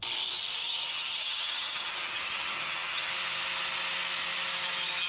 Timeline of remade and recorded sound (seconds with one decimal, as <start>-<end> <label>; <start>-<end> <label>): 0.0-0.6 recorded; 0.6-3.1 remade; 3.1-5.1 recorded